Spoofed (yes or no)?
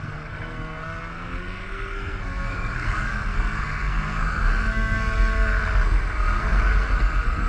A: yes